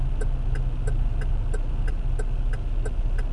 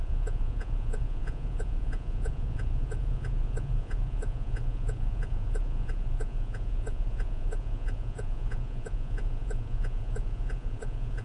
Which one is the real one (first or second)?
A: first